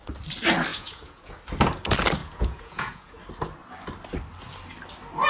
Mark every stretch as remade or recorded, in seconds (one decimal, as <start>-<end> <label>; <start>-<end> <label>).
0.0-0.7 recorded; 0.7-1.3 remade; 1.3-2.2 recorded; 2.2-3.2 remade; 3.2-5.3 recorded